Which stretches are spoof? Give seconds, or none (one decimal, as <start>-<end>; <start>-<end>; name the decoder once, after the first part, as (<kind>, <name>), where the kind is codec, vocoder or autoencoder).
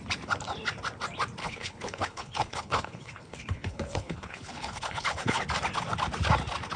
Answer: 1.4-5.4 (codec, HILCodec)